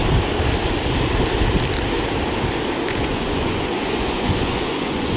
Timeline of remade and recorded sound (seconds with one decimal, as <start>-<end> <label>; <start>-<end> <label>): 0.0-2.8 recorded; 2.8-5.2 remade